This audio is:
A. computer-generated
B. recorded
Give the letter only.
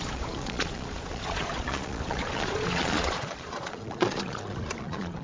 A